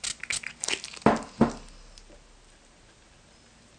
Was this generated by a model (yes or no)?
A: no